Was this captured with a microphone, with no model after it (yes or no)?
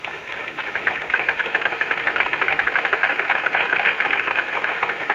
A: no